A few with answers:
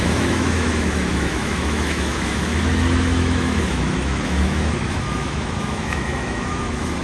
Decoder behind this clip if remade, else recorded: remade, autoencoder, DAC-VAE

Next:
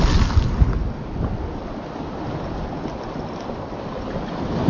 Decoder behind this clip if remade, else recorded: recorded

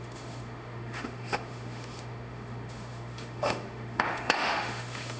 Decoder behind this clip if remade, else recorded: remade, autoencoder, DAC-VAE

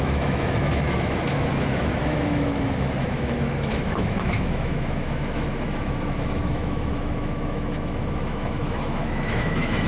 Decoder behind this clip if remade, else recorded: remade, autoencoder, DAC-VAE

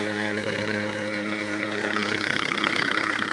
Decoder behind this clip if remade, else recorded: remade, codec, SNAC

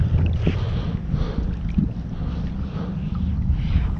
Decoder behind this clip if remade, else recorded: recorded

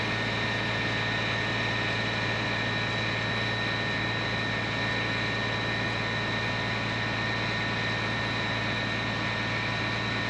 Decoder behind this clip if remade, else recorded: recorded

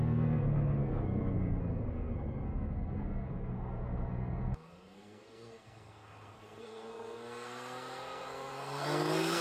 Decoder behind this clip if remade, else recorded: remade, codec, SNAC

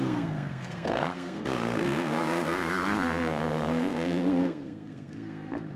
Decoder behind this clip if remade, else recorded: remade, codec, SNAC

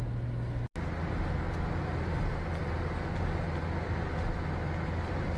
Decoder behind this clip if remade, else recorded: recorded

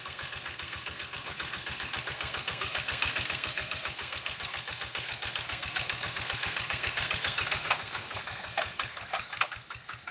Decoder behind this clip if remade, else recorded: remade, codec, SNAC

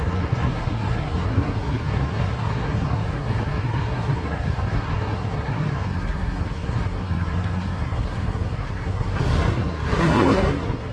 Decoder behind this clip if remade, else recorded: remade, codec, SNAC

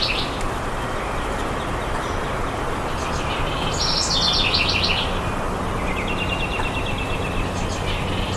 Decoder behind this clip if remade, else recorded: recorded